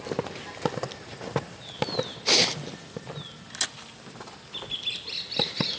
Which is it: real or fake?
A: real